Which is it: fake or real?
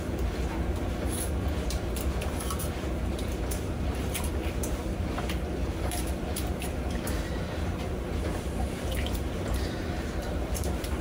fake